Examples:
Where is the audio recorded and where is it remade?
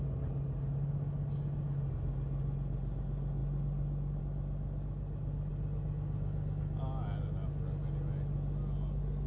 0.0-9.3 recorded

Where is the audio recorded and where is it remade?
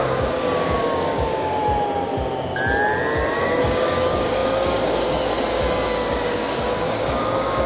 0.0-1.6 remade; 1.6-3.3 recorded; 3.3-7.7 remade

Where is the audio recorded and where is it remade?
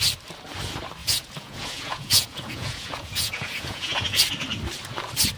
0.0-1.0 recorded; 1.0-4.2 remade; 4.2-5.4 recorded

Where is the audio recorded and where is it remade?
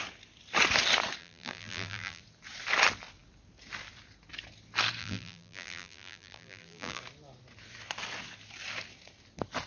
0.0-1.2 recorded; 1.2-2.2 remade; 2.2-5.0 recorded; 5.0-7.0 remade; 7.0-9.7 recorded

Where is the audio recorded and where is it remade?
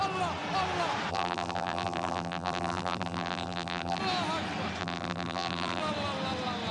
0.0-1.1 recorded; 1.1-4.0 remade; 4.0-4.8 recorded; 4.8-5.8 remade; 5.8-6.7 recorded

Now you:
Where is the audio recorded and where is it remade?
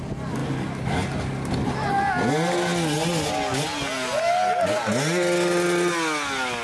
0.0-6.6 recorded